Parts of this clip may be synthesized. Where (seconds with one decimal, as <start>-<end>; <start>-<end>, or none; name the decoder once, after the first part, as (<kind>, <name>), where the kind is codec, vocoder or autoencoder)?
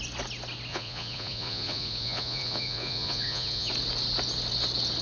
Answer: 0.7-3.7 (vocoder, Vocos)